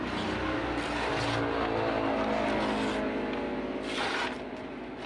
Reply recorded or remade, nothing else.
recorded